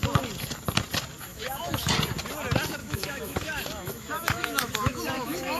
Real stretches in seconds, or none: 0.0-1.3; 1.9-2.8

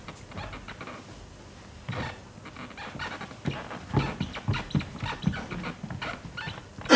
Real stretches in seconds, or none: 0.0-7.0